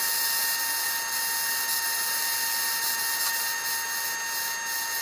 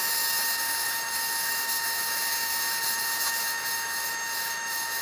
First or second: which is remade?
second